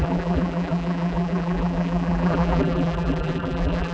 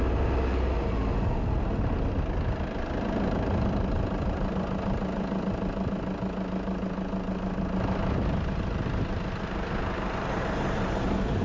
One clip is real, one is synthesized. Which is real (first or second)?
second